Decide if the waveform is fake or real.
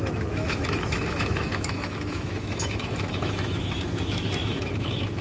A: fake